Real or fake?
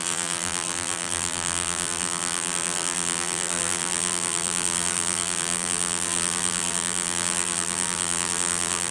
fake